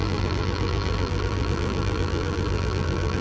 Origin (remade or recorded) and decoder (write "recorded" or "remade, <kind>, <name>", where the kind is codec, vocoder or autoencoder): remade, vocoder, BigVGAN v2